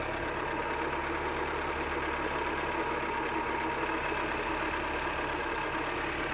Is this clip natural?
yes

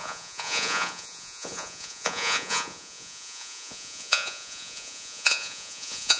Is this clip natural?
no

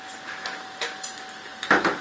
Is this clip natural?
yes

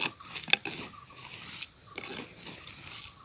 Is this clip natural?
yes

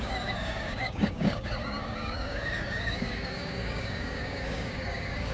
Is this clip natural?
no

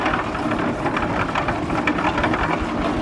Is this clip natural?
yes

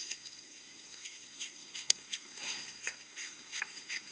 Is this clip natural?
no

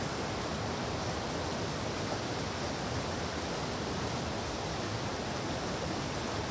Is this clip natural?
yes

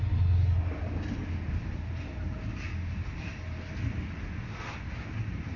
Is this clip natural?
yes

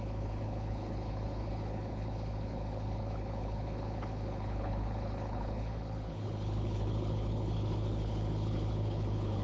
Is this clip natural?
no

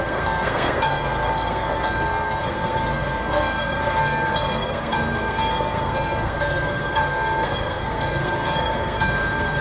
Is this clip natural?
no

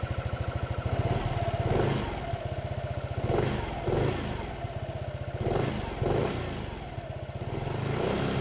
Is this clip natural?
yes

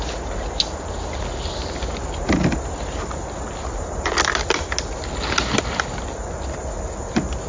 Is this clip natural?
yes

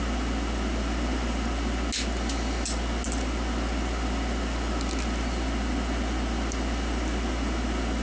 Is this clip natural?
yes